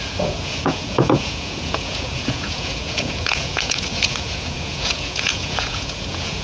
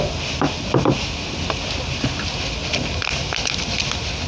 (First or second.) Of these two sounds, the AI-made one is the first